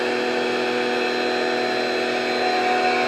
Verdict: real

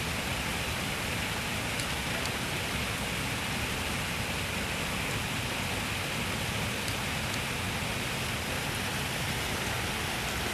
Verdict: real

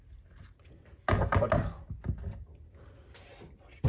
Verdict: real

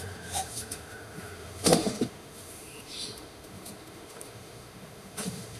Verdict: fake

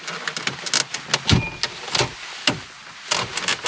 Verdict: real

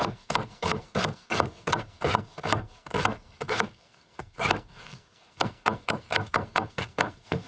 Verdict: fake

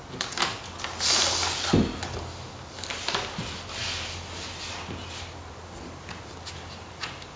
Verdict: real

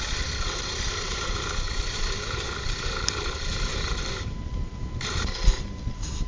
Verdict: fake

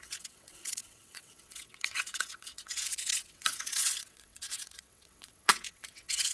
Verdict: fake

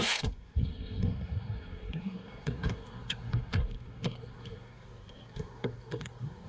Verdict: fake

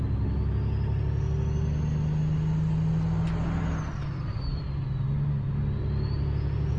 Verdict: real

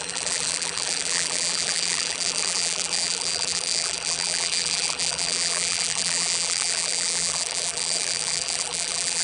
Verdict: fake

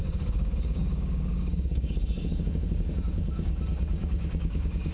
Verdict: fake